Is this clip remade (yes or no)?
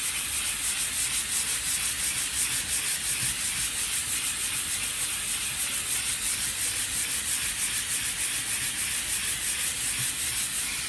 no